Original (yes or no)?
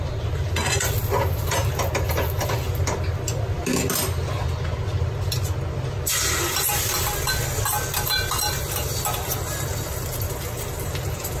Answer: yes